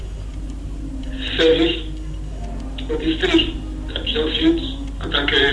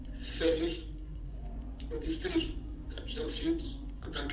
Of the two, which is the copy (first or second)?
second